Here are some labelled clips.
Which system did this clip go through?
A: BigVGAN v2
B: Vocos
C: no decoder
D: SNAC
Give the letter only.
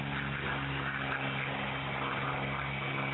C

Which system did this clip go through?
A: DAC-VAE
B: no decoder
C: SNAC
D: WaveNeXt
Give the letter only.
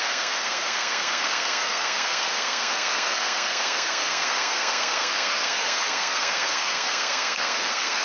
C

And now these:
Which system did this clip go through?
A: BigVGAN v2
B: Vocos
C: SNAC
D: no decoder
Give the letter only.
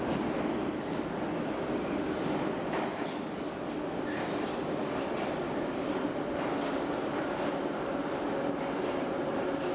D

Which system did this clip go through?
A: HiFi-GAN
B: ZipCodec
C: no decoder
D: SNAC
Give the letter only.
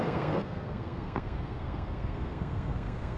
D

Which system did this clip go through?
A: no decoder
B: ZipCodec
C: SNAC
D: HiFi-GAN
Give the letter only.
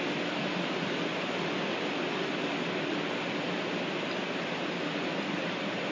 A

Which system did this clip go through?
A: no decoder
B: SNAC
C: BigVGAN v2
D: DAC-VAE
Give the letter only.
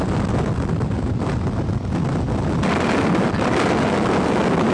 A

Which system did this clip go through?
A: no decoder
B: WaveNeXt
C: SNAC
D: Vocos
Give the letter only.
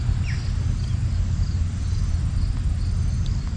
A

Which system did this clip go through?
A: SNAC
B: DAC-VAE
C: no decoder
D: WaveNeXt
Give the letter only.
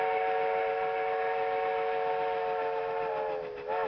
C